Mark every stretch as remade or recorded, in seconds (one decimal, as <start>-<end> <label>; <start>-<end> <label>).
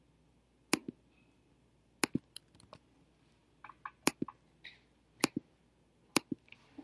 0.0-6.8 recorded